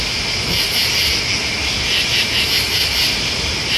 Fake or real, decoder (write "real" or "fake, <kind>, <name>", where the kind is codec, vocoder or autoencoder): real